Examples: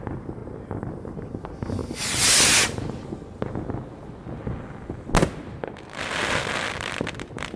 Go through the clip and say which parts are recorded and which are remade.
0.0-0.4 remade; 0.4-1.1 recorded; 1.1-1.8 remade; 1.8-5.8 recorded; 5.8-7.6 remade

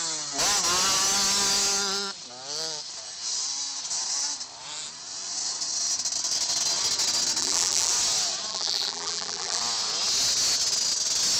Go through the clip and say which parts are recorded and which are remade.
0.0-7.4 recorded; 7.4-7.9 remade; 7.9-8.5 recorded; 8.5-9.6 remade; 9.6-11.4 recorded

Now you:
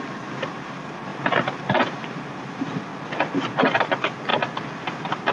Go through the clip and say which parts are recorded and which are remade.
0.0-1.1 remade; 1.1-1.7 recorded; 1.7-2.9 remade; 2.9-3.5 recorded; 3.5-4.3 remade; 4.3-4.8 recorded; 4.8-5.3 remade

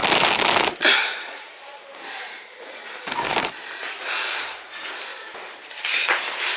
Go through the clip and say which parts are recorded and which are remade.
0.0-1.0 recorded; 1.0-4.0 remade; 4.0-5.1 recorded; 5.1-6.6 remade

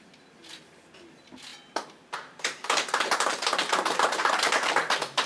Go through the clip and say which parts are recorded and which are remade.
0.0-1.5 recorded; 1.5-4.7 remade; 4.7-5.3 recorded

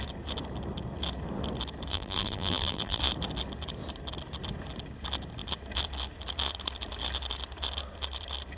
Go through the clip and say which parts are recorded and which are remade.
0.0-1.9 recorded; 1.9-3.0 remade; 3.0-8.6 recorded

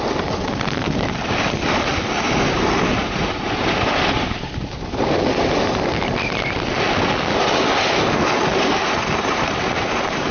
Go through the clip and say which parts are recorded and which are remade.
0.0-3.0 recorded; 3.0-5.0 remade; 5.0-8.5 recorded; 8.5-10.3 remade

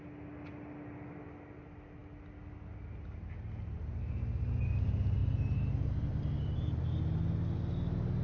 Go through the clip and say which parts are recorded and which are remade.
0.0-5.2 recorded; 5.2-6.8 remade; 6.8-8.2 recorded